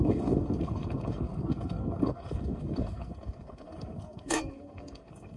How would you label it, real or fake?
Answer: fake